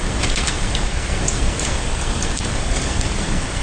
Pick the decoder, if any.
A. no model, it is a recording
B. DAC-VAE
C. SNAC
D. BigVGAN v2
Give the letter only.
C